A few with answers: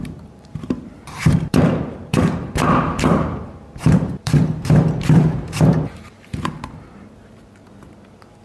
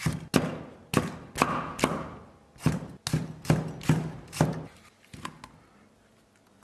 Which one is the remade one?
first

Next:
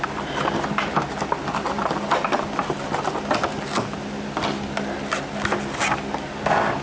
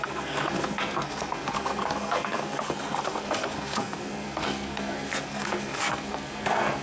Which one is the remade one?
second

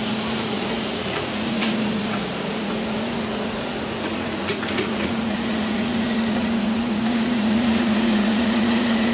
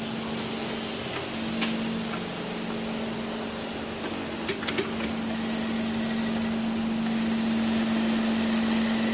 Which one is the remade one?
first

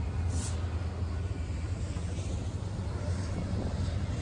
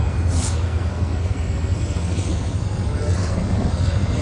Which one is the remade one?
second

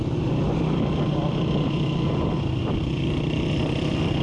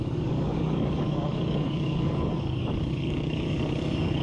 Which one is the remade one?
second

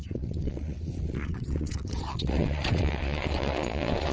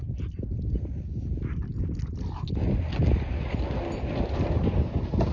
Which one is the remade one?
first